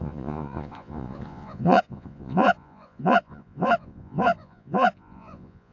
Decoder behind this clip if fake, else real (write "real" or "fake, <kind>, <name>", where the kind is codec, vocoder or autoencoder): fake, vocoder, Vocos